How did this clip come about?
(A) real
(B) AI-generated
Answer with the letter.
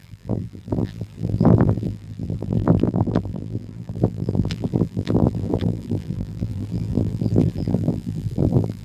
B